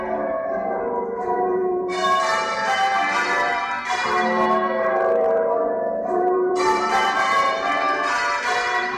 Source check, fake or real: fake